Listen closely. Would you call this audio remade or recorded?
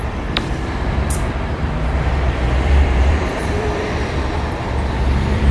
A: remade